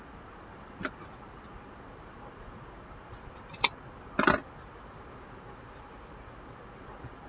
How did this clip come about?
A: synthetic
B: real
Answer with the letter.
B